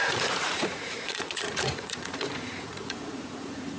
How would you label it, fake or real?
fake